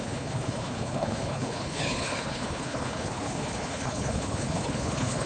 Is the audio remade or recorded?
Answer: remade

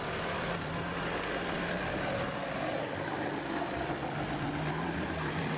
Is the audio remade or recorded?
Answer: recorded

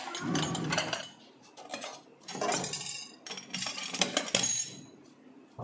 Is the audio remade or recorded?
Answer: recorded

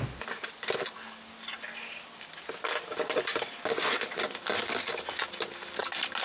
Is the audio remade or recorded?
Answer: recorded